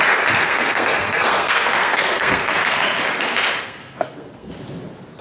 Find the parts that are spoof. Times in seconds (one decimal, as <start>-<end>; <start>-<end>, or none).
0.4-3.0; 3.6-4.5

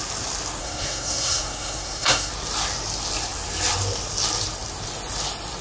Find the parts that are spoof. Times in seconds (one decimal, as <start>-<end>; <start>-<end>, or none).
0.6-2.3

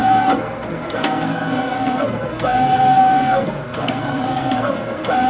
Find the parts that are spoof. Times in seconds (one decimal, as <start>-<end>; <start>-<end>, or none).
0.0-5.3

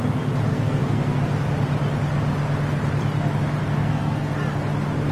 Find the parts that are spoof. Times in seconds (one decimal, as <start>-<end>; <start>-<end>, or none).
0.5-1.2; 3.6-4.3